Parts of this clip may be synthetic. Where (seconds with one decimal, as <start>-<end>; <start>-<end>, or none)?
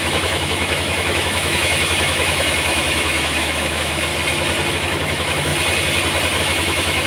0.0-4.1; 4.7-5.5; 6.4-7.1